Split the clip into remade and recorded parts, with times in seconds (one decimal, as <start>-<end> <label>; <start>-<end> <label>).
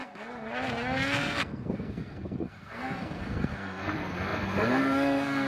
0.0-5.5 remade